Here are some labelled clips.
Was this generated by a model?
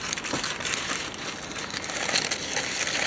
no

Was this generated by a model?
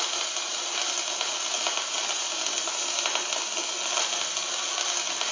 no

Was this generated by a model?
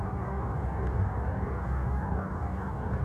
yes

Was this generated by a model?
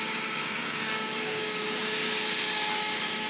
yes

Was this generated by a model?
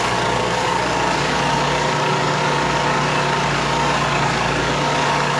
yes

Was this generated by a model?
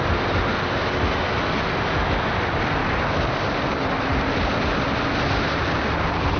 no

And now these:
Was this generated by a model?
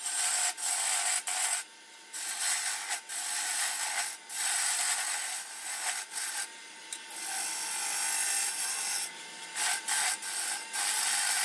no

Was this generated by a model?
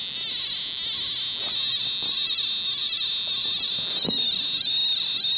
no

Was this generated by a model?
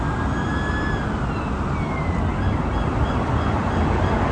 no